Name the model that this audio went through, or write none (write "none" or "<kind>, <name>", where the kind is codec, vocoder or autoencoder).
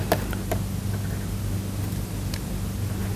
none